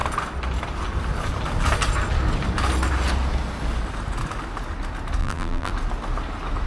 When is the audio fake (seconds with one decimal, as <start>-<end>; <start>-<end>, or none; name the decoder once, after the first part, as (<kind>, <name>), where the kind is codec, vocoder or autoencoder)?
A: 5.2-5.7 (vocoder, BigVGAN v2)